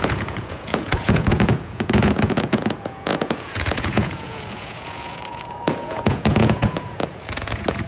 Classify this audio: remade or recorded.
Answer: remade